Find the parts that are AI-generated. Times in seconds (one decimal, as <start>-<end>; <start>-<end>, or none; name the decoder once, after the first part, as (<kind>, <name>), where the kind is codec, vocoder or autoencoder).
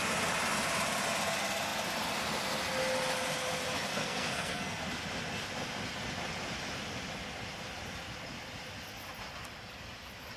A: 3.9-4.8 (codec, SNAC)